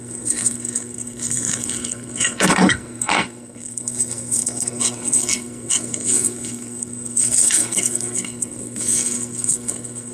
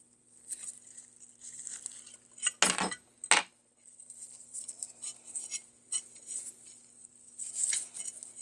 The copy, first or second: first